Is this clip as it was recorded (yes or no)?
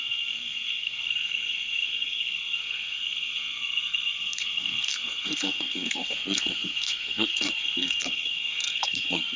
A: no